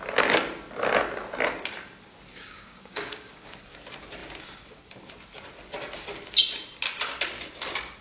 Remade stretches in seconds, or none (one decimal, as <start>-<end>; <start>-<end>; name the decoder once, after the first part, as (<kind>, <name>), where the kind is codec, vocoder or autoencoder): 2.3-3.6 (codec, DAC)